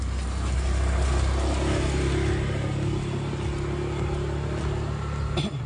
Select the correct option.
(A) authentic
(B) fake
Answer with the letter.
A